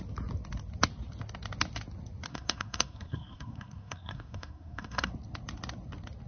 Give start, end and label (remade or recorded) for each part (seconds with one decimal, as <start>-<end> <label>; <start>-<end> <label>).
0.0-2.3 recorded; 2.3-5.1 remade; 5.1-6.3 recorded